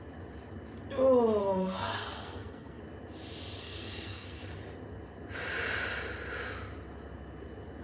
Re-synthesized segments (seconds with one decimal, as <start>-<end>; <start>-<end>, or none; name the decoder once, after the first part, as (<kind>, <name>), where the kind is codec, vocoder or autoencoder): 1.4-2.8 (codec, SNAC); 3.6-4.4